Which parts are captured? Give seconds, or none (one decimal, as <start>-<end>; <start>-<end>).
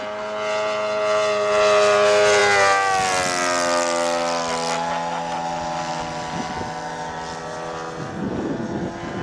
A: 0.0-9.2